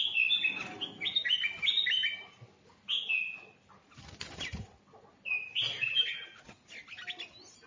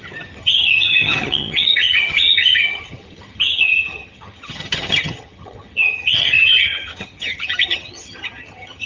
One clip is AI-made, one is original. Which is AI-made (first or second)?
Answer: second